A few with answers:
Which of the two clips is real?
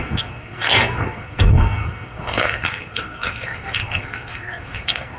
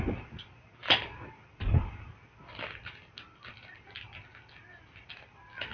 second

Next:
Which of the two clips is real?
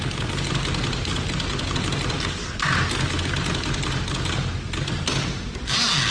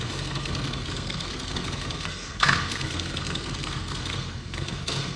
first